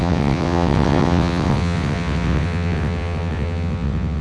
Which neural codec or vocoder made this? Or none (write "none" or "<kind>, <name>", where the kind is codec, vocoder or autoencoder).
vocoder, WaveNeXt